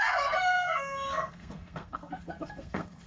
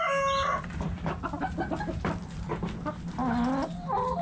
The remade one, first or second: first